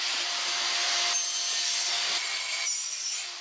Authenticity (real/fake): real